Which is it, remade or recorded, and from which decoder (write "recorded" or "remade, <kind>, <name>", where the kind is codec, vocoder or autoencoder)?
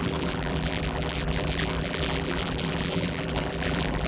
remade, vocoder, BigVGAN v2